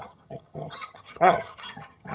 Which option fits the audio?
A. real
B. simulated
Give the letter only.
B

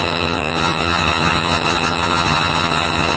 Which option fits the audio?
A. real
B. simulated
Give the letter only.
B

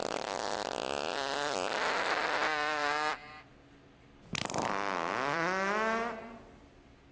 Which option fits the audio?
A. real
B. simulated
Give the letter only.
B